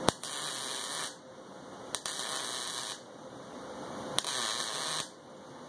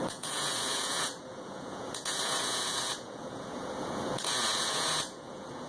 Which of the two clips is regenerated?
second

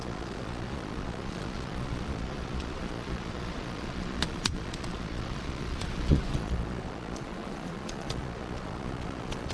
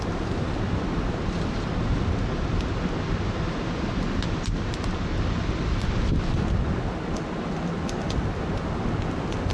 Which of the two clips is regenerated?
first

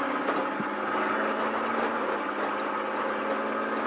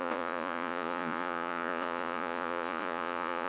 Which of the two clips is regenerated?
second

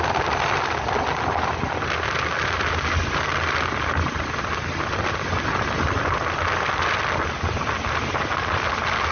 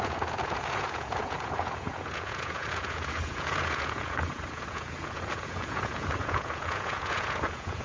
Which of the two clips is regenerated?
second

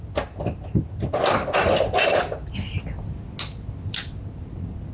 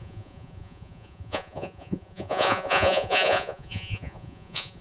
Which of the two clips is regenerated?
second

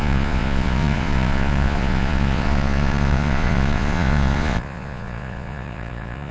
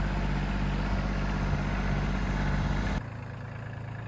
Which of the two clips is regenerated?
first